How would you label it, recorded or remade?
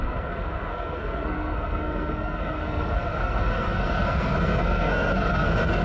remade